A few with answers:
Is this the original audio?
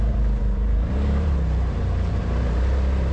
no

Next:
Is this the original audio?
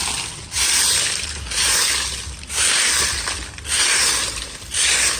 yes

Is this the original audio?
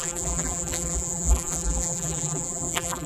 no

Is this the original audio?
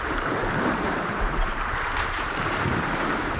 no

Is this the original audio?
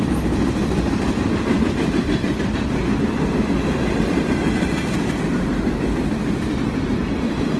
no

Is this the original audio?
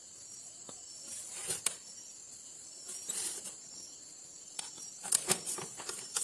yes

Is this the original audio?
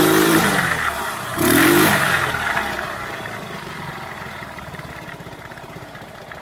no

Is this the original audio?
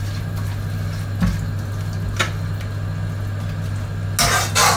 yes